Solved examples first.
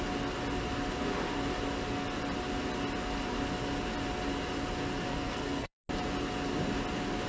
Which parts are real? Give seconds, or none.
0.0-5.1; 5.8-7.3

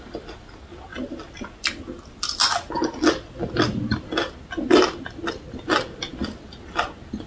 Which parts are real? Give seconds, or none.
0.0-7.3

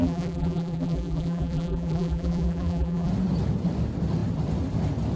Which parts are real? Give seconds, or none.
3.1-5.2

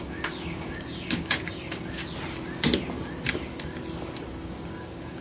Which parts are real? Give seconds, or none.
2.0-4.3